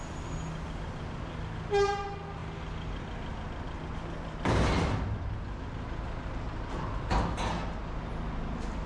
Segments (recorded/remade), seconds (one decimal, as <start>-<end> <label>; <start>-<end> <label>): 0.0-8.9 recorded